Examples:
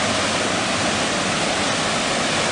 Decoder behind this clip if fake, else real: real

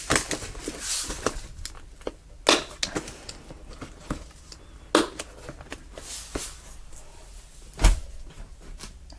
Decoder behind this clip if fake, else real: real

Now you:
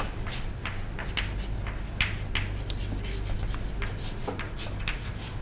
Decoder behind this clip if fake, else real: real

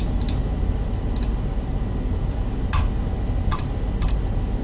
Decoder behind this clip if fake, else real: real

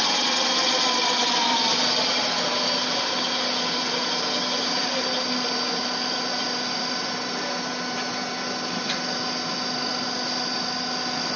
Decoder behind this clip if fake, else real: real